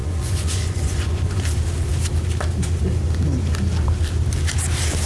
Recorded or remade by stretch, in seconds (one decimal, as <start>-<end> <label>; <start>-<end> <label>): 0.0-1.4 remade; 1.4-5.1 recorded